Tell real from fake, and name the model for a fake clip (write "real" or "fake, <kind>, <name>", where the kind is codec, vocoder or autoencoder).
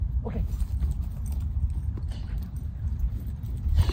real